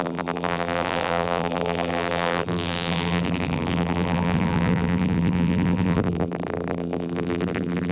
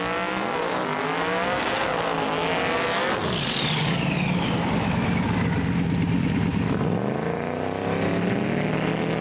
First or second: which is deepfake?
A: first